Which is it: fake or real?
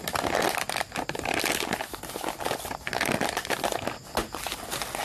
real